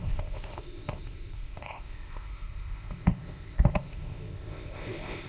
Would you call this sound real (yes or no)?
no